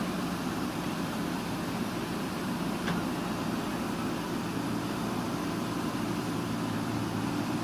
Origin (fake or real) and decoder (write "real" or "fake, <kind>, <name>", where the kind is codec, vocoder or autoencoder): fake, vocoder, BigVGAN v2